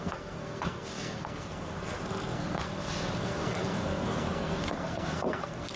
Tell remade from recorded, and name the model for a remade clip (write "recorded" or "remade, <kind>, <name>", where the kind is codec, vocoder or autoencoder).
remade, codec, SNAC